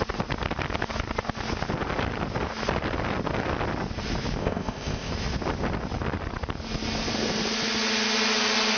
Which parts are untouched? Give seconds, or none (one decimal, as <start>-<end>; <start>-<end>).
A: 0.0-4.4; 5.1-8.8